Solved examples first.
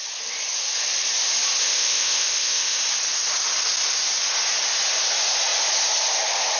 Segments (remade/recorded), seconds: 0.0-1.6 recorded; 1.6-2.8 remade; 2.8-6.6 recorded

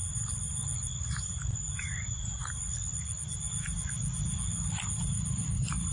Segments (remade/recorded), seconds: 0.0-1.1 recorded; 1.1-2.4 remade; 2.4-5.1 recorded; 5.1-5.9 remade